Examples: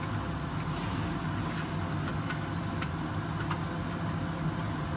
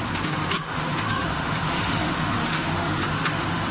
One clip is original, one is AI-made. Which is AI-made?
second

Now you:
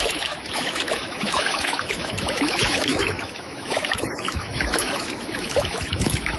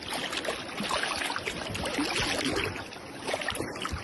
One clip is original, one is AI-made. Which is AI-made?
first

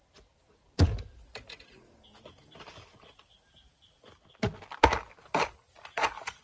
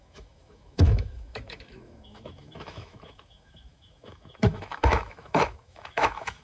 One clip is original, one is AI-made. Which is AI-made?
second